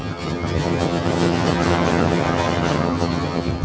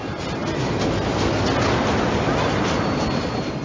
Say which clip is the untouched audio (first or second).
second